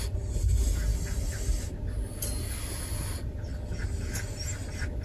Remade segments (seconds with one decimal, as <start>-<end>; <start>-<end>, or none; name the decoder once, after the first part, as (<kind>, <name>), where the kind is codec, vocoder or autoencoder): none